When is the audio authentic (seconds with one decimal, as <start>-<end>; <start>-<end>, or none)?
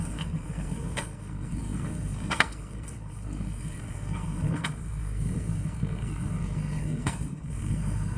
none